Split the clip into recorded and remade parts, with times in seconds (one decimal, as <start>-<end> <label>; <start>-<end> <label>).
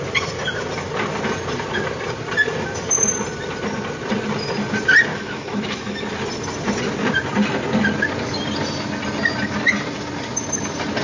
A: 0.0-5.1 recorded; 5.1-6.1 remade; 6.1-11.0 recorded